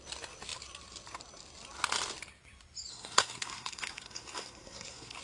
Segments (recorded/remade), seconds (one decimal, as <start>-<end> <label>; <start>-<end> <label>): 0.0-2.9 recorded; 2.9-5.2 remade

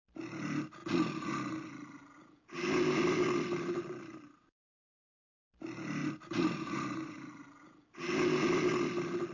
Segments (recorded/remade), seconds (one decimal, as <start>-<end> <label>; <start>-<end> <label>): 0.0-6.0 recorded; 6.0-7.3 remade; 7.3-9.3 recorded

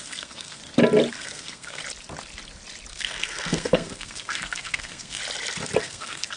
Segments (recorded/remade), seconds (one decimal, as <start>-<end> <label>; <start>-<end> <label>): 0.0-0.6 remade; 0.6-1.1 recorded; 1.1-1.8 remade; 1.8-2.9 recorded; 2.9-5.2 remade; 5.2-5.8 recorded; 5.8-6.4 remade

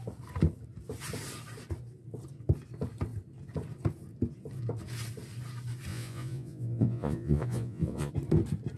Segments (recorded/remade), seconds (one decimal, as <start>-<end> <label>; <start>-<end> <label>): 0.0-5.9 recorded; 5.9-8.1 remade; 8.1-8.8 recorded

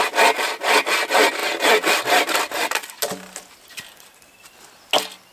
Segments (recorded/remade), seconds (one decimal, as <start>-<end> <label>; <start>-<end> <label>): 0.0-5.3 recorded